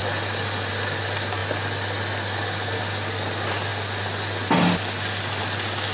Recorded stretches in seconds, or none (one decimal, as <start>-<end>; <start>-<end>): 0.0-5.9